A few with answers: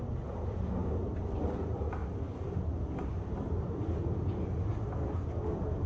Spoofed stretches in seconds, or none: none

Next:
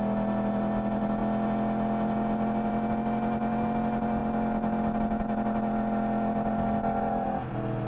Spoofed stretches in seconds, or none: none